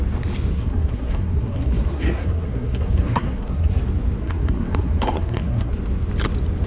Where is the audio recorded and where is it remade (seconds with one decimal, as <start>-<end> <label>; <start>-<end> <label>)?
0.0-0.5 recorded; 0.5-3.8 remade; 3.8-4.2 recorded; 4.2-5.7 remade; 5.7-6.7 recorded